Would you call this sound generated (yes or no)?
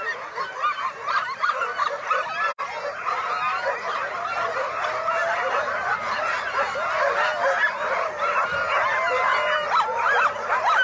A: no